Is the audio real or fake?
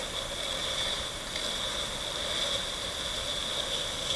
real